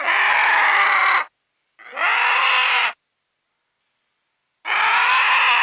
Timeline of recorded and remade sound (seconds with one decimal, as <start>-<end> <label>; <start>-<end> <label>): 0.0-5.6 recorded